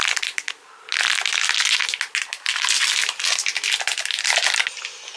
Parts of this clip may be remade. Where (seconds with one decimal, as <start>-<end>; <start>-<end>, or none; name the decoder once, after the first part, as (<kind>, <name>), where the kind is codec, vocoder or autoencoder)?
2.5-3.5 (vocoder, BigVGAN v2)